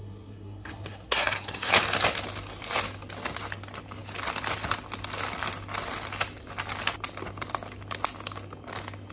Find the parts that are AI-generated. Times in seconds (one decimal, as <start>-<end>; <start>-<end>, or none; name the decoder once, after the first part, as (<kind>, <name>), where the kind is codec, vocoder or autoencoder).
0.0-1.7 (codec, SNAC)